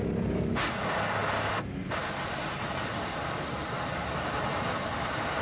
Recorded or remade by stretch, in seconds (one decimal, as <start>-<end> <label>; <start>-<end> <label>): 0.0-5.4 recorded